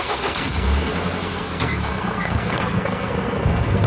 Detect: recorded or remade remade